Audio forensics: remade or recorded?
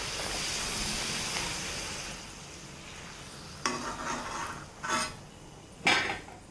recorded